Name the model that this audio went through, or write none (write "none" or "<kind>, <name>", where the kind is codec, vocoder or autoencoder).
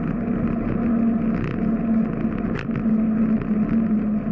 none